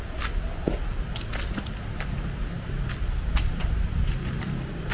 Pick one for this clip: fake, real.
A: real